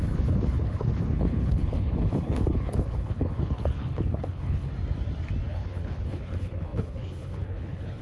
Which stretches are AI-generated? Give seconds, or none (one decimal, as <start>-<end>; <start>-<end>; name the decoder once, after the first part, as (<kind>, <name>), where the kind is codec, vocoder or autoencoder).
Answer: 0.0-4.7 (codec, HILCodec); 5.5-8.0